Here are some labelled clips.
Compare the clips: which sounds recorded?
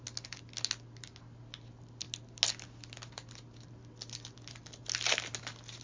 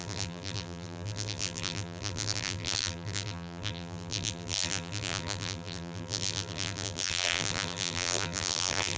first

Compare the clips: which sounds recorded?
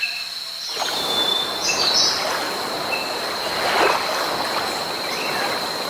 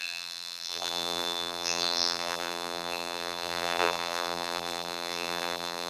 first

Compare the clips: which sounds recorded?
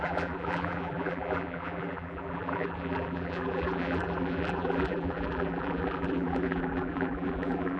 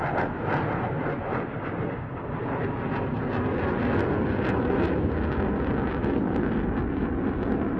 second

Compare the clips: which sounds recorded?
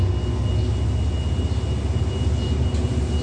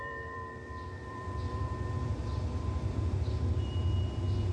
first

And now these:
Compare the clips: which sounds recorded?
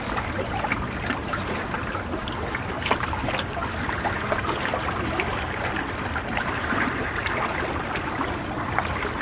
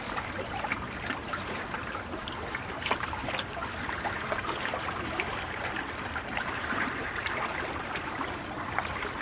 first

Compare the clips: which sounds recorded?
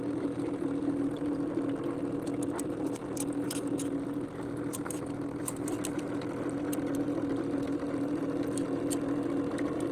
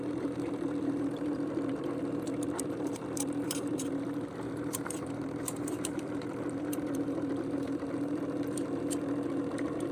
first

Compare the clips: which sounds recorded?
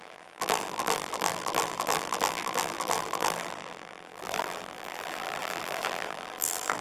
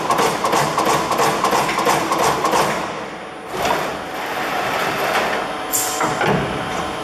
second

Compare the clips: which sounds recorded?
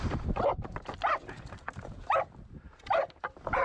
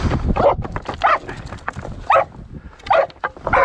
second